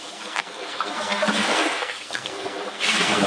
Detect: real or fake fake